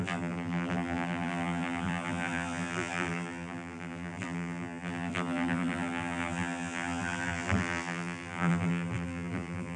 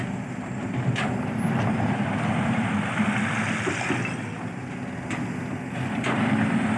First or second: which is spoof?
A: first